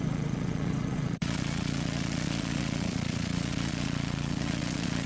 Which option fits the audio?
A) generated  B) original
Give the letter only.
A